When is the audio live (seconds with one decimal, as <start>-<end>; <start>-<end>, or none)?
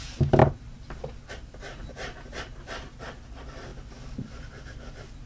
0.0-5.3